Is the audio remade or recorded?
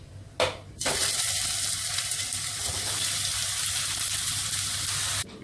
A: recorded